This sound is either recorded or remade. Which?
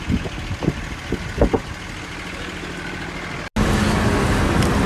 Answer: recorded